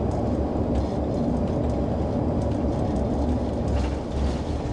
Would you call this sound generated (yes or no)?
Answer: no